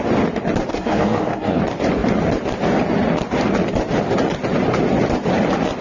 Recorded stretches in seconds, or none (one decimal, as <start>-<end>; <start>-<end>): 0.0-0.7; 1.6-5.8